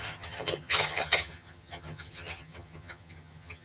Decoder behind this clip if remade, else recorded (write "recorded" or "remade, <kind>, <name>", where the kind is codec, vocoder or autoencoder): remade, vocoder, HiFi-GAN